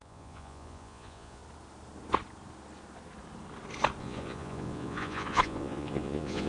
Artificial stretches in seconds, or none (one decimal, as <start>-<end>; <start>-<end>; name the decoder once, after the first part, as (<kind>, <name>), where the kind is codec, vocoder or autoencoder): 0.0-1.4 (vocoder, Vocos); 4.0-6.5